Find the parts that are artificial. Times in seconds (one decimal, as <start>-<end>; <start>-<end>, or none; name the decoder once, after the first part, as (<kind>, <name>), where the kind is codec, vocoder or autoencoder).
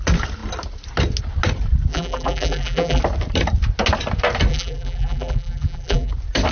1.9-3.0 (vocoder, BigVGAN v2); 4.5-6.1